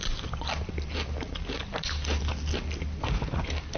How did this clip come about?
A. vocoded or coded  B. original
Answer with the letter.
B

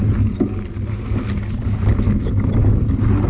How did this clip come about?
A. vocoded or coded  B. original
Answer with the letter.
B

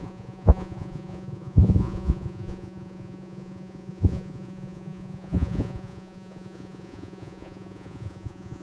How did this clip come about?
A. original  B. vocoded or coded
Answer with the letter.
B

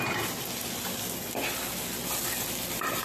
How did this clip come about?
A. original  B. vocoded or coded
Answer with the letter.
A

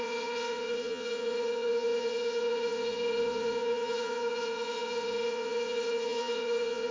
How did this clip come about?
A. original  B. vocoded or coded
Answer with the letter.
B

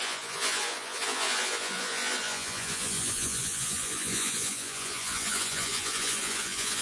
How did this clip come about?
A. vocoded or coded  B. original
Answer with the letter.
A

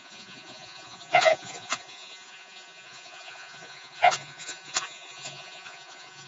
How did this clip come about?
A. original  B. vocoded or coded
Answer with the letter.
B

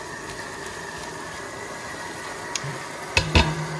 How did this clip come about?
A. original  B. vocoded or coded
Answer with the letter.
A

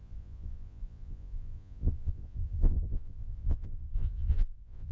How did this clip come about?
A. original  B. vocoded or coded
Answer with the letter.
B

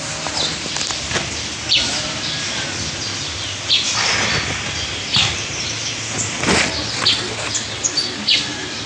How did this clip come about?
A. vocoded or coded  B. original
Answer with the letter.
B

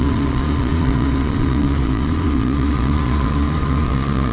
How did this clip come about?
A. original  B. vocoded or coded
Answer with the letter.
B